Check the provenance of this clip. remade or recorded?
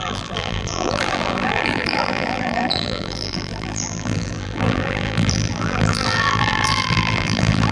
remade